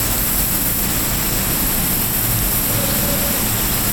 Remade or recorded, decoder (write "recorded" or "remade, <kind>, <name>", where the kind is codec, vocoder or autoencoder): recorded